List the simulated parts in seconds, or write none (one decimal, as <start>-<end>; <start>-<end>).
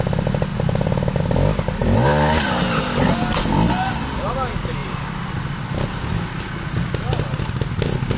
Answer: none